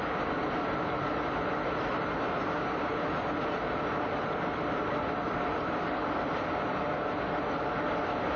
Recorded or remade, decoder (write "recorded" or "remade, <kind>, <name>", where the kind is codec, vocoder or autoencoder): recorded